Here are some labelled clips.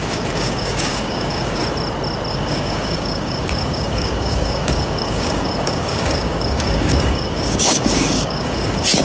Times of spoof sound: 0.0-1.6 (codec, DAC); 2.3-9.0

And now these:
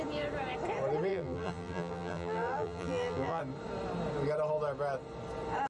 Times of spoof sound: 1.1-3.4 (vocoder, BigVGAN v2)